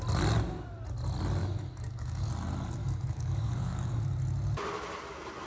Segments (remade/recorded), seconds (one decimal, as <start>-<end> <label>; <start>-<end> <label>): 0.0-1.4 recorded; 1.4-2.3 remade; 2.3-2.8 recorded; 2.8-4.0 remade; 4.0-5.5 recorded